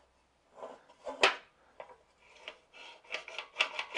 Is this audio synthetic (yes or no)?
no